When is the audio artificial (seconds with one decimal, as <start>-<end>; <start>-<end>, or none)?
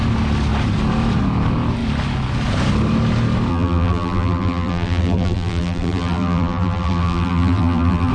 3.5-8.1